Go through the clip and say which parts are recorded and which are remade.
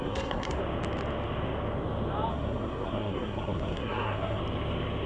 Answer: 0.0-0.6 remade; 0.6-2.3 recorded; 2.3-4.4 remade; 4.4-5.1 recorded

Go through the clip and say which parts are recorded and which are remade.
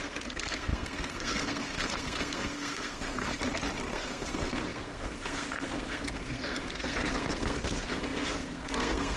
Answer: 0.0-3.2 remade; 3.2-3.8 recorded; 3.8-9.2 remade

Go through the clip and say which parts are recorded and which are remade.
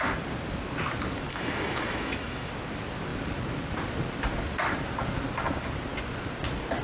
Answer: 0.0-1.3 recorded; 1.3-2.5 remade; 2.5-6.8 recorded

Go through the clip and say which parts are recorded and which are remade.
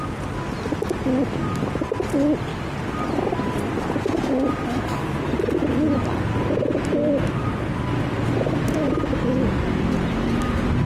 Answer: 0.0-10.8 recorded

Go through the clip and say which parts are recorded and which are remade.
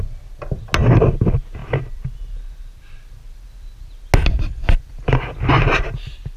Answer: 0.0-6.4 recorded